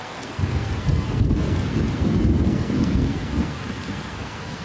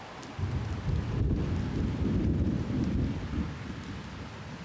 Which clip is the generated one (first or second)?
first